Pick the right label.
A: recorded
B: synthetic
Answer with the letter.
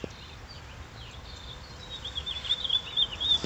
A